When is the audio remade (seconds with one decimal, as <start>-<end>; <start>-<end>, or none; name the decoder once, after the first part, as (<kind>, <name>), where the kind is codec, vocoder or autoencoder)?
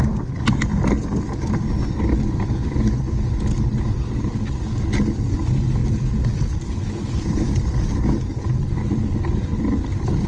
none